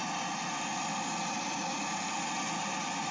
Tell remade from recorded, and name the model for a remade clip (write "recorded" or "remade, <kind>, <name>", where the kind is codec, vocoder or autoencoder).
recorded